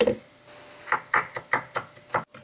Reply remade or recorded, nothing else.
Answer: recorded